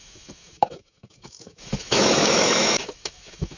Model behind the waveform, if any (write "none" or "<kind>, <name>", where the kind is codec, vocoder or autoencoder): autoencoder, DAC-VAE